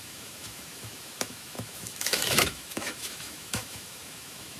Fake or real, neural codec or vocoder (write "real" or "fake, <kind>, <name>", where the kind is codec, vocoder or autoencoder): fake, autoencoder, DAC-VAE